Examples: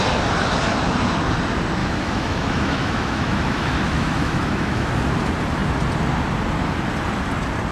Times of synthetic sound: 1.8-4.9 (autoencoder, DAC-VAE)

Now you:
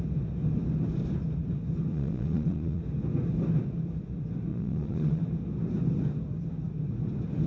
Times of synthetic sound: 1.9-2.8 (vocoder, Vocos); 4.5-5.2